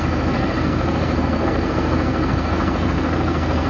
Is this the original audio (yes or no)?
no